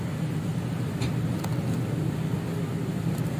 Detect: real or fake real